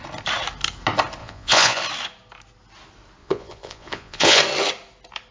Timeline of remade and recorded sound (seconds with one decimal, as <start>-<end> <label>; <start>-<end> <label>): 0.0-1.2 recorded; 1.2-1.8 remade; 1.8-3.2 recorded; 3.2-4.4 remade; 4.4-5.3 recorded